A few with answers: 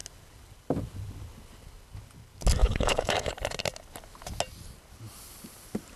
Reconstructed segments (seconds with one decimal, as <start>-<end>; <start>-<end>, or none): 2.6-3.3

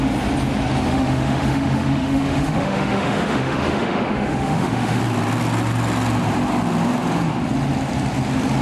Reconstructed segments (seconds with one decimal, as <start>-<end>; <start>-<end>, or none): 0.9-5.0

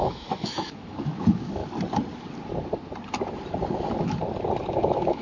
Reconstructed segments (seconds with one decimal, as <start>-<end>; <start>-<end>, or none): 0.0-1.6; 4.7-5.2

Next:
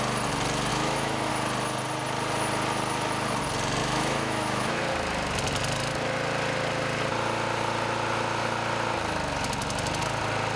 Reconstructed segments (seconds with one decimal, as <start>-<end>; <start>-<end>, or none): 0.7-1.3; 3.8-4.8

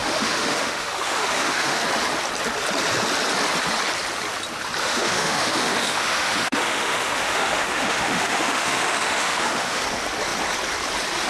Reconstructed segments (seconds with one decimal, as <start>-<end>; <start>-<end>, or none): 0.0-1.8; 4.8-9.8

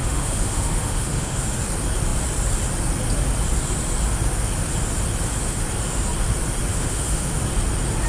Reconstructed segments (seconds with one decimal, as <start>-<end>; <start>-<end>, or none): 0.0-1.4; 6.7-7.4